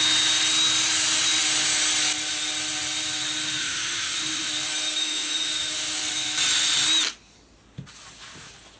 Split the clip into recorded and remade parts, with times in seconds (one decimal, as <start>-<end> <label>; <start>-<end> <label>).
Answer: 0.0-3.6 recorded; 3.6-4.5 remade; 4.5-5.0 recorded; 5.0-5.5 remade; 5.5-8.8 recorded